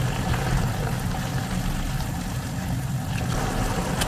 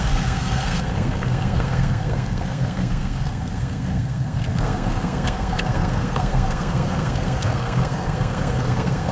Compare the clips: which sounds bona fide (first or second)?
first